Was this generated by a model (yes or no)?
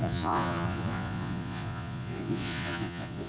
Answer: yes